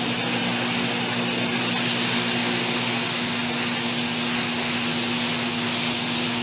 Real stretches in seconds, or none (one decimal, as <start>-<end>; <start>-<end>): 0.0-6.4